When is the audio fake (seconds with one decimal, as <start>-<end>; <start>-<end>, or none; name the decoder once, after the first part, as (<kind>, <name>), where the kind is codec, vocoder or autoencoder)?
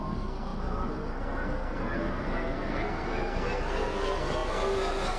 0.0-5.2 (codec, SNAC)